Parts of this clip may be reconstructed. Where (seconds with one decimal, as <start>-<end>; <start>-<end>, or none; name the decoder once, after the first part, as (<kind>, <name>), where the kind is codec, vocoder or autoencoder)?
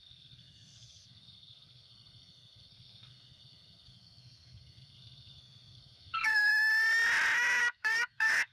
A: 0.0-6.5 (codec, SNAC); 7.6-8.5